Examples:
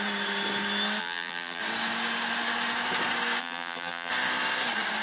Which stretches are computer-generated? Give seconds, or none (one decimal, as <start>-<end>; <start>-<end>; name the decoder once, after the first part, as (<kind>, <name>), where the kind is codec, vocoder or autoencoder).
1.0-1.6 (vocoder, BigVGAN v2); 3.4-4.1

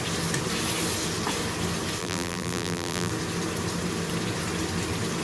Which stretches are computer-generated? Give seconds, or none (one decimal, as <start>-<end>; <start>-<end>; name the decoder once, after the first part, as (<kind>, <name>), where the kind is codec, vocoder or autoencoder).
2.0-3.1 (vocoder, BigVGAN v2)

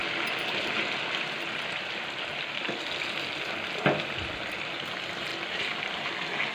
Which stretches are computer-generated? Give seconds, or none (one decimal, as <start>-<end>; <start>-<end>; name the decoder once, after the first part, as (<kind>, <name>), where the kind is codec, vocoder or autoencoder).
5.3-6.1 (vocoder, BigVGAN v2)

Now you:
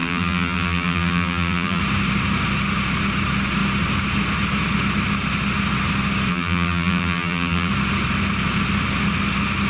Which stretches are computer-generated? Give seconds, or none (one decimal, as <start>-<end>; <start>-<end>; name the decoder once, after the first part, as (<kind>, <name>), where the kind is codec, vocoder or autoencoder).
0.0-1.8 (vocoder, BigVGAN v2); 6.3-7.7